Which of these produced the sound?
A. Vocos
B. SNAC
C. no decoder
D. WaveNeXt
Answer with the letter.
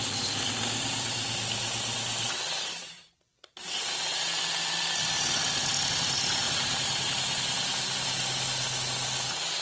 C